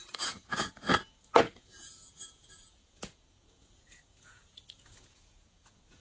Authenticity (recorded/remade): remade